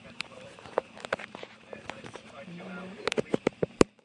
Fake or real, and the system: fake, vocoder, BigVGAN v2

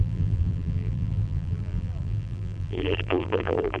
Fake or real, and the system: fake, vocoder, BigVGAN v2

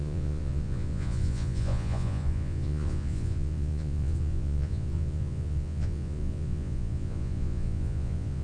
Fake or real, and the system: fake, vocoder, Vocos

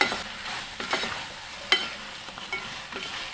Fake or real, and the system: real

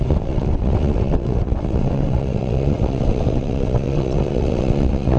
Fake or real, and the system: fake, vocoder, WaveNeXt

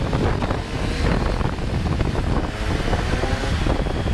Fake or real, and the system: real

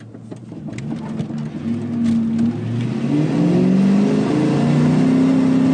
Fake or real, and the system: real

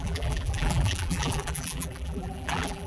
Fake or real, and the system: fake, vocoder, BigVGAN v2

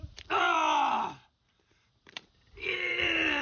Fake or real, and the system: fake, vocoder, BigVGAN v2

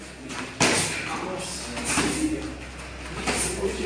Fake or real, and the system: real